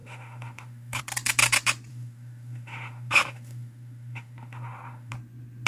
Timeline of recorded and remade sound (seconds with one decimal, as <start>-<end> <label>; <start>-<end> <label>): 0.0-1.0 remade; 1.0-1.9 recorded; 1.9-5.1 remade; 5.1-5.7 recorded